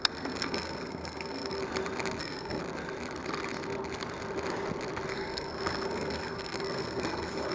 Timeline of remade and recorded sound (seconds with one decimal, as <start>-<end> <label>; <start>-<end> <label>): 0.0-1.6 remade; 1.6-2.2 recorded; 2.2-2.6 remade; 2.6-5.1 recorded; 5.1-7.5 remade

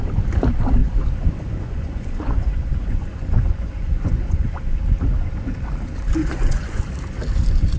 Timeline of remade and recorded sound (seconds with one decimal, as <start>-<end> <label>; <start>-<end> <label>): 0.0-0.8 recorded; 0.8-4.6 remade; 4.6-6.2 recorded; 6.2-6.8 remade; 6.8-7.8 recorded

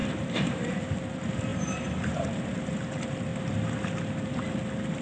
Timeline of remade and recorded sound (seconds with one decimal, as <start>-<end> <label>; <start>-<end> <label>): 0.0-0.7 remade; 0.7-1.5 recorded; 1.5-2.6 remade; 2.6-5.0 recorded

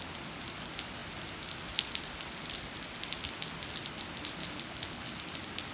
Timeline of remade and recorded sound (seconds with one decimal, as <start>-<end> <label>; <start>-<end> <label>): 0.0-4.4 recorded; 4.4-5.1 remade; 5.1-5.7 recorded

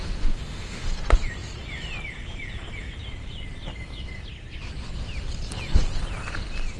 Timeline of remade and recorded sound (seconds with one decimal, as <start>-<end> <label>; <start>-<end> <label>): 0.0-0.9 remade; 0.9-6.8 recorded

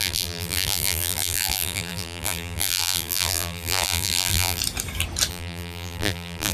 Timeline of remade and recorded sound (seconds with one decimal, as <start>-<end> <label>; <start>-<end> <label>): 0.0-4.6 remade; 4.6-5.3 recorded; 5.3-6.5 remade